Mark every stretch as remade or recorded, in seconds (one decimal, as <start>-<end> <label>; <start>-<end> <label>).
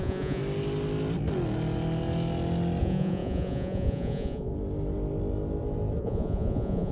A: 0.0-0.4 remade; 0.4-2.8 recorded; 2.8-4.5 remade; 4.5-6.0 recorded; 6.0-6.9 remade